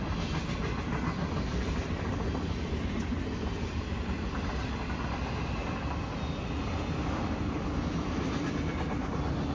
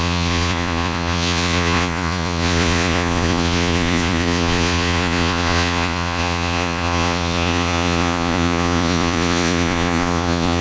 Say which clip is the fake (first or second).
second